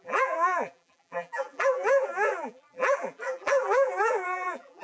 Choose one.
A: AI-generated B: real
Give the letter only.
A